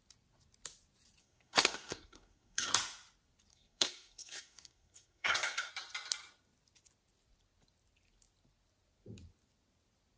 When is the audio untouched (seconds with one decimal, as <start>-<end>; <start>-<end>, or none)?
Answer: 0.0-1.2; 2.7-3.5; 5.7-10.2

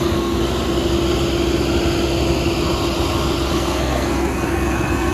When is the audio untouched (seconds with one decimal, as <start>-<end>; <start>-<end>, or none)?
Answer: 0.4-3.5

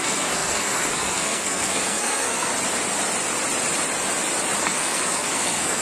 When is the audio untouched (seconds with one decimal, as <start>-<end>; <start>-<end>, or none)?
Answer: 2.5-4.6

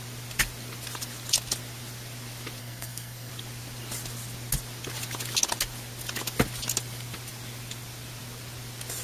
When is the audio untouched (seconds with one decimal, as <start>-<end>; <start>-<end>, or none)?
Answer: 0.0-2.6; 3.3-9.0